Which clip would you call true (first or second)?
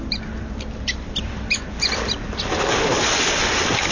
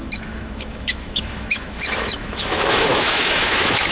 first